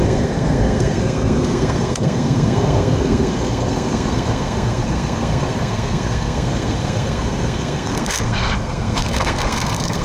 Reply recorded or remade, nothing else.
remade